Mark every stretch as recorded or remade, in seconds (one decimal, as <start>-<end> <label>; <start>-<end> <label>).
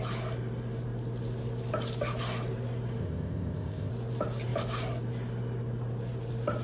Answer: 0.0-3.0 recorded; 3.0-3.9 remade; 3.9-6.6 recorded